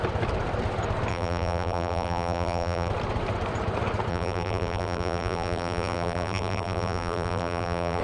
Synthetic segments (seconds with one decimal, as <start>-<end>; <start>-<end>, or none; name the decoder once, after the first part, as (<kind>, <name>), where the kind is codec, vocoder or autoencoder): 1.1-2.9 (vocoder, BigVGAN v2); 4.1-8.0